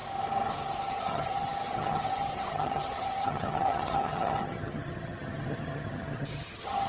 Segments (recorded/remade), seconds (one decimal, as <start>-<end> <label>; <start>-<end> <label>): 0.0-0.9 recorded; 0.9-6.9 remade